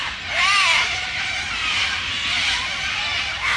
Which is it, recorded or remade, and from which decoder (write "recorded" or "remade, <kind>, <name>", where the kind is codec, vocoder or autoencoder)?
recorded